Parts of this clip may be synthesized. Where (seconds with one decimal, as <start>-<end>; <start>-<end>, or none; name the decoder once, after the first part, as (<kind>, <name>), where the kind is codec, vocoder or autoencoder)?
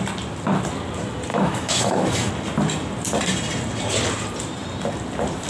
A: 1.3-2.3 (autoencoder, DAC-VAE)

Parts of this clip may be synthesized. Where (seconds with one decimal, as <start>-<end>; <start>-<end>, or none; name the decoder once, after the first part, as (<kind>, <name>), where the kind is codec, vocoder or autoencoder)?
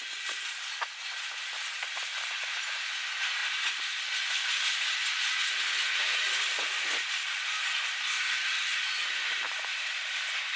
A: 8.1-8.8 (vocoder, HiFi-GAN)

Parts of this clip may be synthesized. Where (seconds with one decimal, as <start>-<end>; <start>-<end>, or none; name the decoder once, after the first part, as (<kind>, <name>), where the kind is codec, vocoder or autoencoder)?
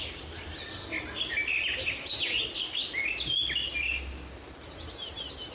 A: none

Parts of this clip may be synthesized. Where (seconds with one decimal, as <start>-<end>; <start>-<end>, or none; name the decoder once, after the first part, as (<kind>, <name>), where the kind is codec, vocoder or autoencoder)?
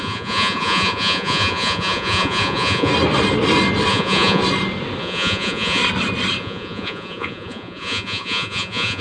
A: 0.0-2.9 (vocoder, Vocos); 3.9-4.4; 5.0-5.8; 6.4-9.0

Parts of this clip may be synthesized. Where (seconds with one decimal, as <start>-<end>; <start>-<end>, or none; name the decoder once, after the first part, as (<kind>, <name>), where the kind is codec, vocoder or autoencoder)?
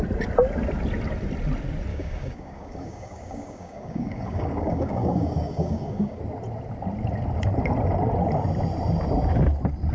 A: 1.9-6.2 (codec, DAC)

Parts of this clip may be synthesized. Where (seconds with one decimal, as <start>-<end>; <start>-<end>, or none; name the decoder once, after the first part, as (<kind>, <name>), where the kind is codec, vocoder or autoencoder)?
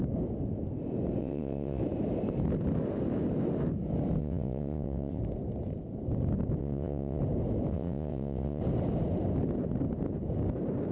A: 1.2-1.8 (vocoder, WaveNeXt); 4.2-5.2; 6.6-7.2; 7.7-8.6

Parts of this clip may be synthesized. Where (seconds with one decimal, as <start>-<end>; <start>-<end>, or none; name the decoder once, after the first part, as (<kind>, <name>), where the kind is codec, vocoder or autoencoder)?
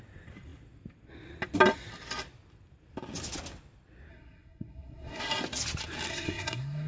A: 4.1-5.2 (codec, SNAC); 6.1-6.9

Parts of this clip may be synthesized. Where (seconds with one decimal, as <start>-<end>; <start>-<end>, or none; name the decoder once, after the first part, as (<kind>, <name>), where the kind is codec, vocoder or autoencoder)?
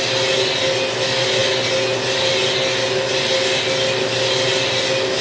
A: none